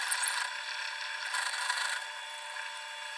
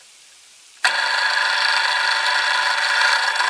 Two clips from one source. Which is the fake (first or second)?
first